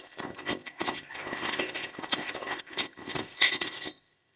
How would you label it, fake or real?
fake